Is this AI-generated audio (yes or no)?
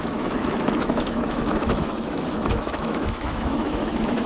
yes